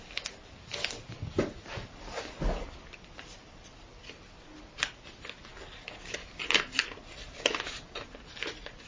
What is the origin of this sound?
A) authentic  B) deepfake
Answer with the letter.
A